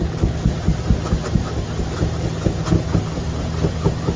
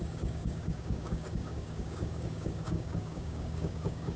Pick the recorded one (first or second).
first